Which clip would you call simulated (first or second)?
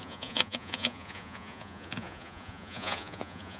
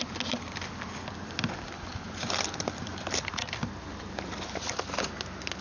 first